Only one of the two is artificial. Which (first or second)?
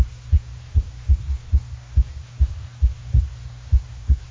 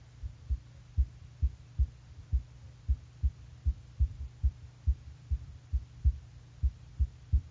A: first